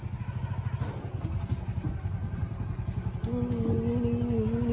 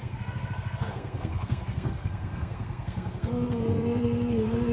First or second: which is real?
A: first